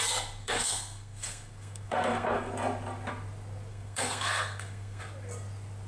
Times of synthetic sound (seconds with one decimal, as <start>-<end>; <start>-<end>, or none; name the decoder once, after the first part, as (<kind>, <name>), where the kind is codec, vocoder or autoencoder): 0.4-2.5 (codec, SNAC); 3.7-5.0